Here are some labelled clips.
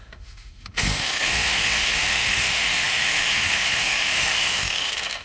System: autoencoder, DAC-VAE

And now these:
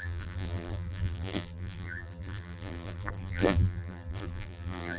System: vocoder, BigVGAN v2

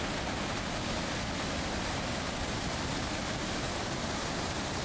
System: vocoder, BigVGAN v2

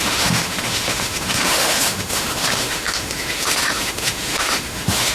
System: autoencoder, DAC-VAE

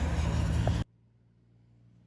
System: none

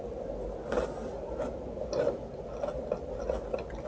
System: none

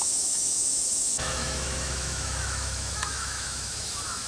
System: autoencoder, DAC-VAE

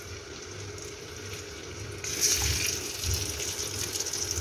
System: none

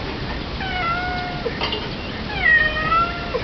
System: none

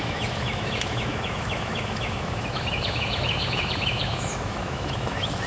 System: autoencoder, DAC-VAE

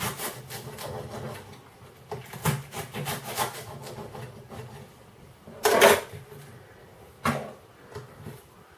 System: none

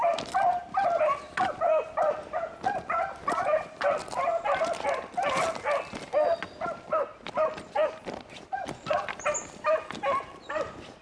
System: none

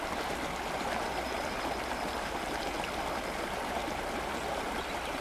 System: none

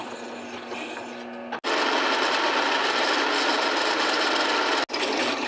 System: none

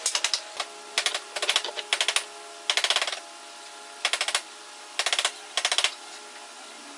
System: none